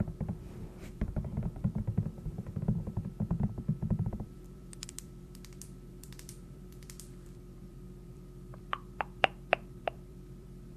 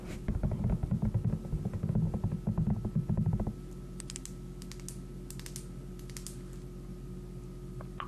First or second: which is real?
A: second